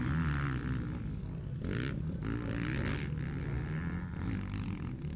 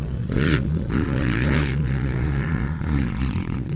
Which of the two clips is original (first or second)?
first